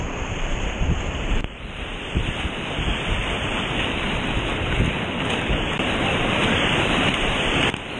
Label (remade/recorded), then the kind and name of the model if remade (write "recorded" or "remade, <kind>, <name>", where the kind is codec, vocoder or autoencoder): remade, vocoder, BigVGAN v2